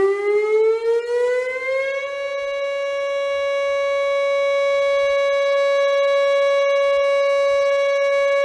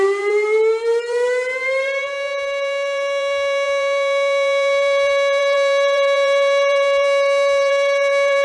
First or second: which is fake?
second